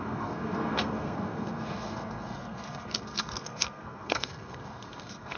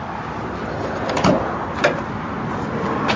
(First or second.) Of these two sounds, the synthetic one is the first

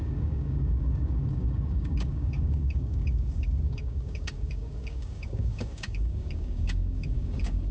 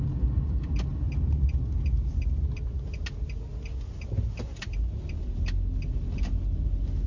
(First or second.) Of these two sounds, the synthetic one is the first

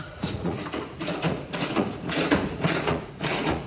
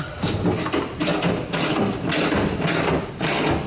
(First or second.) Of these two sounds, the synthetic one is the first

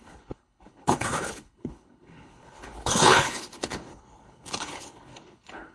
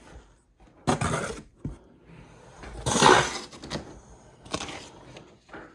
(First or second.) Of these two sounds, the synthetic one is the first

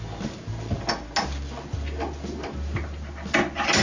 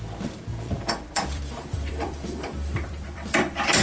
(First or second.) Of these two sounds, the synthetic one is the second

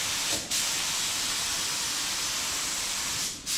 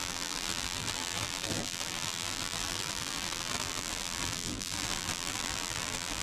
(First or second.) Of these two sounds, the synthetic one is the second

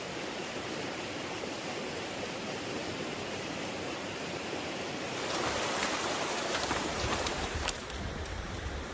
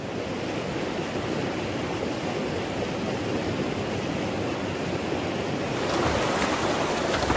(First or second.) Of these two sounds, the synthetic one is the first